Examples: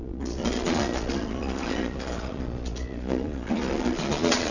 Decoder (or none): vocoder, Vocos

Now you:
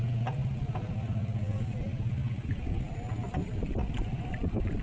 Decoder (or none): none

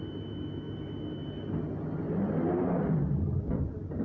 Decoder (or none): none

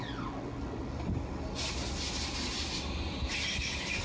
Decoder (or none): vocoder, BigVGAN v2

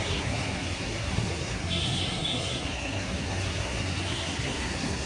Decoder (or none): codec, SNAC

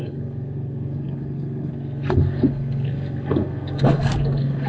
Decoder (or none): codec, SNAC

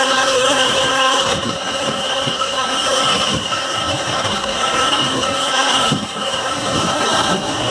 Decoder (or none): codec, SNAC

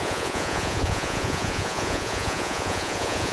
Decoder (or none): vocoder, Vocos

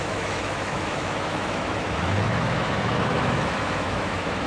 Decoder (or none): autoencoder, DAC-VAE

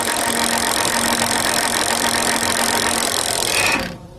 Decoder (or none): none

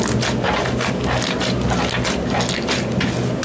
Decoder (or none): none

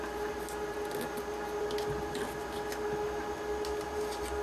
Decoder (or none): none